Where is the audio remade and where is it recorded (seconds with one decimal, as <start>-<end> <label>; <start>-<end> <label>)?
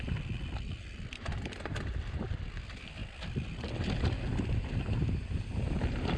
0.0-6.2 recorded